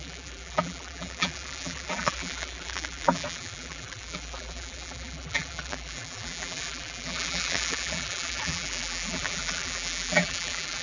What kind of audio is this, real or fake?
fake